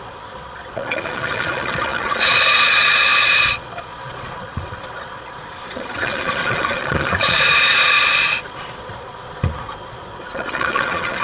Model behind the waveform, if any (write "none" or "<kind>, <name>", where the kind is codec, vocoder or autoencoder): vocoder, Vocos